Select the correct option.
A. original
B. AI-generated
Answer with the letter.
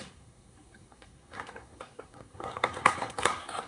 B